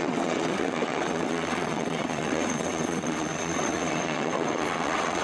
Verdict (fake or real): fake